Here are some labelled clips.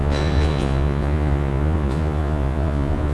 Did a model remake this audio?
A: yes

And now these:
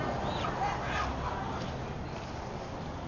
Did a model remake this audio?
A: no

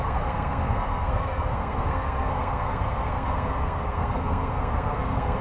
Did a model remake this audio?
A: yes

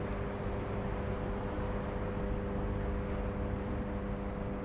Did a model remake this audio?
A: no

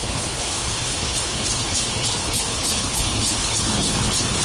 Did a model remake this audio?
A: yes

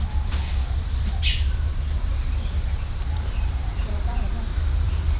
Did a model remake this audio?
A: yes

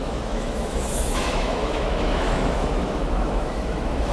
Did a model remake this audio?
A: yes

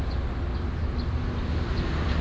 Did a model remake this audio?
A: no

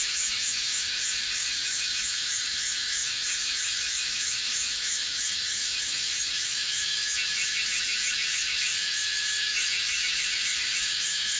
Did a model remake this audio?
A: yes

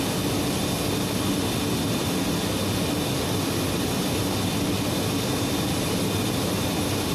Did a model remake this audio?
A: no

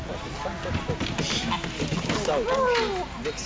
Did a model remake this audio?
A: no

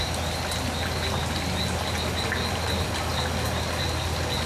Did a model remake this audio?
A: no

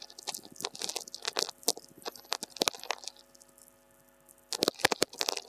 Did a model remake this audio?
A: no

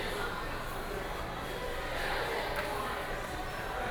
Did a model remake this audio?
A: no